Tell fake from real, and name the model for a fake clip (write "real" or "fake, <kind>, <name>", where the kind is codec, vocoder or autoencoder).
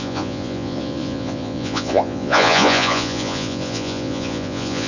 fake, vocoder, Vocos